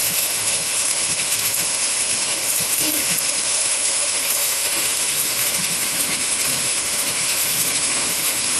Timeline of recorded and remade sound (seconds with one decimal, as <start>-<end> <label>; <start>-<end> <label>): 0.0-8.6 remade